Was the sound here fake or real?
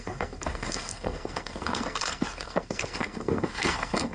fake